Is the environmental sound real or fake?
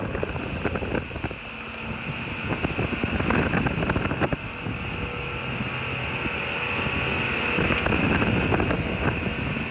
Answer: real